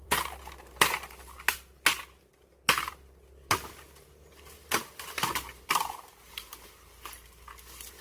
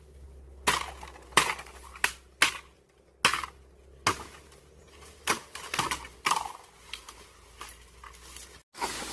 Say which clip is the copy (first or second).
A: first